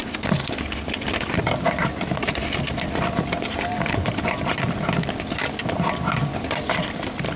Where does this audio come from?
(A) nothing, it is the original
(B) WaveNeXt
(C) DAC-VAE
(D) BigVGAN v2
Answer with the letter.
D